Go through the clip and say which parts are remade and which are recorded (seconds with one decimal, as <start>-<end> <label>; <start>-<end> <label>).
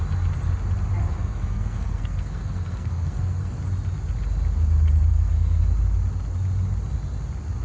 0.0-1.0 recorded; 1.0-3.6 remade; 3.6-5.1 recorded; 5.1-5.6 remade; 5.6-7.6 recorded